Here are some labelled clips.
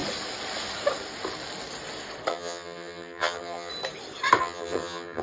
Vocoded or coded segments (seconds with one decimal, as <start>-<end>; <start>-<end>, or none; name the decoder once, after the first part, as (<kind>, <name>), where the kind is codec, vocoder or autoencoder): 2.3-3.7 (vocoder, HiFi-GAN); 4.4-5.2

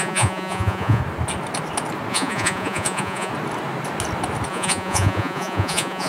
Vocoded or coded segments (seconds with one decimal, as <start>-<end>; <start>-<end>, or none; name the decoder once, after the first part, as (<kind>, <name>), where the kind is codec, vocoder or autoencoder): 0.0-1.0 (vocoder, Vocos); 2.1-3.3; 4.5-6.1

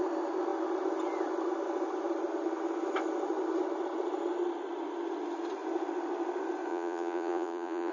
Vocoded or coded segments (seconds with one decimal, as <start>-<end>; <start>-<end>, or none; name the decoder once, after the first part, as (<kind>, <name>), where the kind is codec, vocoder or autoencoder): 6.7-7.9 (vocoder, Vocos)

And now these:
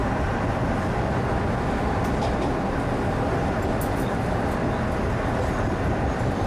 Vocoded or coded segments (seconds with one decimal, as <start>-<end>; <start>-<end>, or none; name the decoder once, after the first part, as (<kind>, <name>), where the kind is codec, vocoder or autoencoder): none

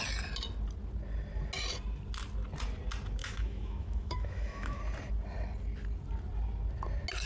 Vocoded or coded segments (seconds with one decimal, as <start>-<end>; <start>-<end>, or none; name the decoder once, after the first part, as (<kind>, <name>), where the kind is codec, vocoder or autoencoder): 3.2-4.8 (autoencoder, DAC-VAE)

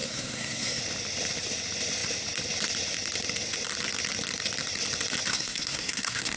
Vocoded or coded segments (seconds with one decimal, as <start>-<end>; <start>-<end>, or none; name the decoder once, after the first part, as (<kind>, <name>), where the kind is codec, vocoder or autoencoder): 0.0-0.8 (codec, SNAC); 5.3-6.4